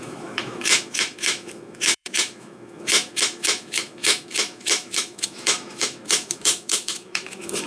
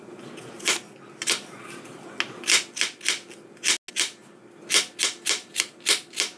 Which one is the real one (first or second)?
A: second